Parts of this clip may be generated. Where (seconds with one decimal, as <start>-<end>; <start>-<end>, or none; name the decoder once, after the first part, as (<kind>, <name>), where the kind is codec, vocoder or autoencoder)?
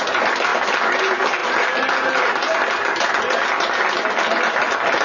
none